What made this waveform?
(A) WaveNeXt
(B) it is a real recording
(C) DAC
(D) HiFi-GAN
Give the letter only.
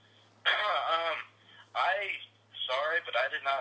B